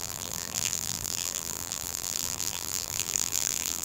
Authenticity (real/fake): fake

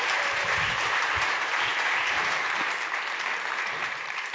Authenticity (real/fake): fake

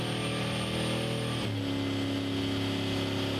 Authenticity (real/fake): real